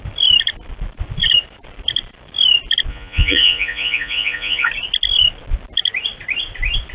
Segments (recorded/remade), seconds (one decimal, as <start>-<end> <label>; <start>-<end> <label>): 0.0-2.9 recorded; 2.9-4.7 remade; 4.7-6.9 recorded